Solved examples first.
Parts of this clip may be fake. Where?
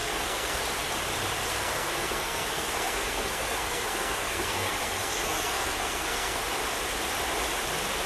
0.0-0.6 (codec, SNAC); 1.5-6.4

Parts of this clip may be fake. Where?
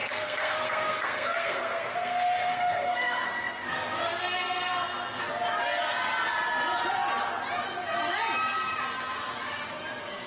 0.0-5.3 (codec, SNAC)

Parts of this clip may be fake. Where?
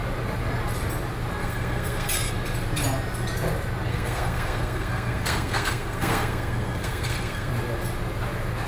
1.4-2.3 (codec, SNAC); 3.9-7.5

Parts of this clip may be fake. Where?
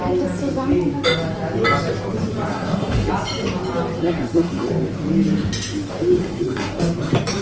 2.5-3.1 (codec, SNAC); 4.0-4.7; 6.2-6.8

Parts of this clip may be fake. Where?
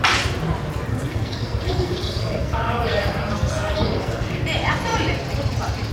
0.9-4.4 (codec, SNAC)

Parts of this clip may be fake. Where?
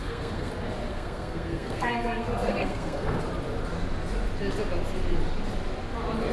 0.0-0.5 (codec, SNAC); 0.9-3.2